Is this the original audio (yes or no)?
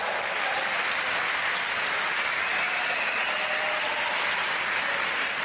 yes